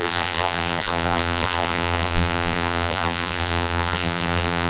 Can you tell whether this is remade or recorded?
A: remade